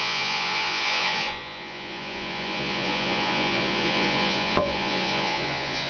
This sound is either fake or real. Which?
fake